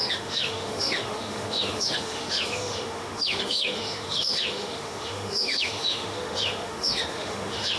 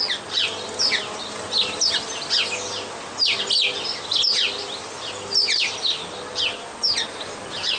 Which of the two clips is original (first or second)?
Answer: second